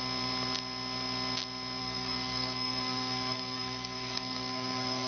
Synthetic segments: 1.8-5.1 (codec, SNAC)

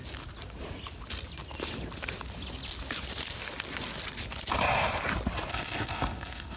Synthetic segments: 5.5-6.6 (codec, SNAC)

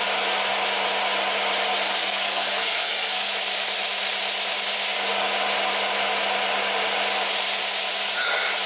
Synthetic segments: 2.0-3.3 (codec, SNAC)

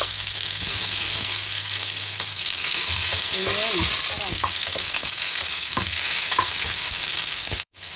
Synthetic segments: 0.0-3.5 (codec, SNAC); 4.3-8.0